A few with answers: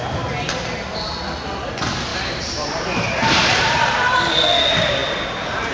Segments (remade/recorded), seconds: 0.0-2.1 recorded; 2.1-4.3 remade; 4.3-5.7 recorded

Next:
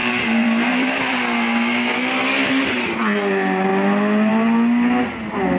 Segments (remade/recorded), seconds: 0.0-1.2 remade; 1.2-5.6 recorded

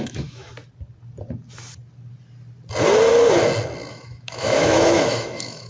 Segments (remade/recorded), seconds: 0.0-0.5 remade; 0.5-3.9 recorded; 3.9-5.7 remade

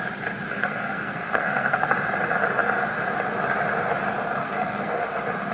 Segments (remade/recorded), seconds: 0.0-0.6 recorded; 0.6-1.9 remade; 1.9-4.4 recorded; 4.4-5.0 remade; 5.0-5.5 recorded